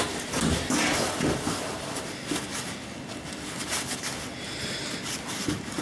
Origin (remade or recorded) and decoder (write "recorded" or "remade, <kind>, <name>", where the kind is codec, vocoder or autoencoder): recorded